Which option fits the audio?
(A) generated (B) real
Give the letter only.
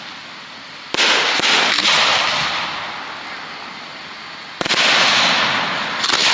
B